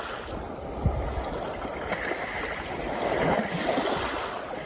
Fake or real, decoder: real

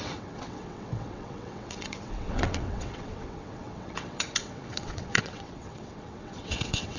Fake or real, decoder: fake, vocoder, WaveNeXt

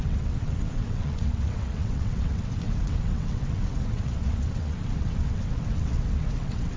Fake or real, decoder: fake, vocoder, WaveNeXt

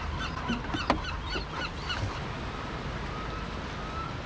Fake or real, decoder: real